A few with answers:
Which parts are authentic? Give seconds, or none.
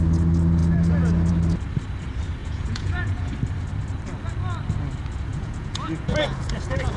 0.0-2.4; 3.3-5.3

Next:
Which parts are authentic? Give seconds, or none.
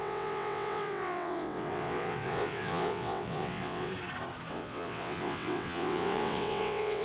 3.9-4.5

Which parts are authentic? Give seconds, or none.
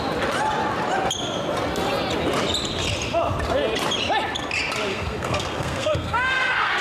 0.0-4.9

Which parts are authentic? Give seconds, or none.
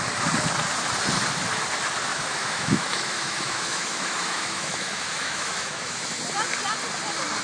0.0-2.1; 6.2-7.4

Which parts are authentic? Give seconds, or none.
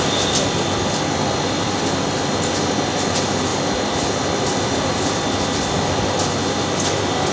0.0-7.3